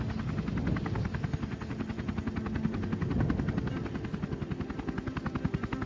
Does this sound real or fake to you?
real